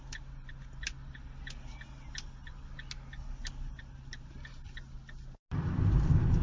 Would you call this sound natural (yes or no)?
yes